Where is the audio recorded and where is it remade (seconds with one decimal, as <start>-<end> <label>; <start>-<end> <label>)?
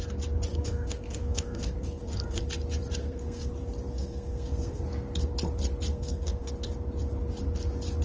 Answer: 0.0-0.5 recorded; 0.5-2.4 remade; 2.4-3.0 recorded; 3.0-3.5 remade; 3.5-3.9 recorded; 3.9-4.8 remade; 4.8-5.9 recorded; 5.9-6.5 remade; 6.5-8.0 recorded